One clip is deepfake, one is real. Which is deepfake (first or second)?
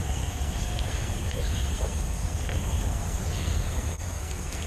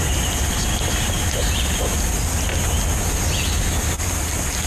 first